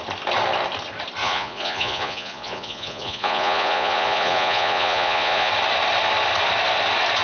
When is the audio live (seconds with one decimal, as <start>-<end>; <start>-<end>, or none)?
0.0-1.2; 5.5-7.2

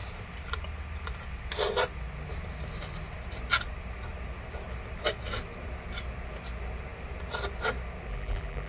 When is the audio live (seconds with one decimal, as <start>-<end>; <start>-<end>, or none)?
0.0-8.1

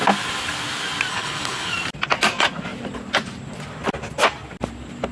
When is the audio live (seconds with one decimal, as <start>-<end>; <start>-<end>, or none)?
0.0-1.1; 1.7-5.1